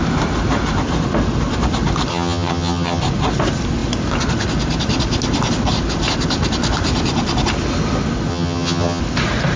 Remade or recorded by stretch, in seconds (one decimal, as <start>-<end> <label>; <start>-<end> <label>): 0.0-2.1 recorded; 2.1-3.0 remade; 3.0-8.3 recorded; 8.3-9.0 remade; 9.0-9.6 recorded

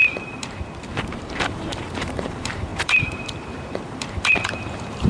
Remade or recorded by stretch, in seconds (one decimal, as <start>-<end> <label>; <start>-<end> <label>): 0.0-5.1 remade